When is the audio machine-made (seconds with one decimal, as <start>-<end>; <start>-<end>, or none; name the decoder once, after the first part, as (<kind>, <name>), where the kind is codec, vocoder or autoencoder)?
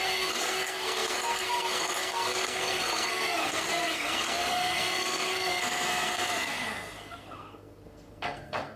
0.0-8.8 (codec, SNAC)